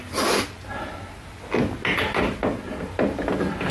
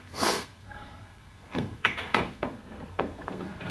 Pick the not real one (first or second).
second